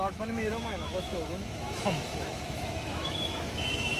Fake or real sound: fake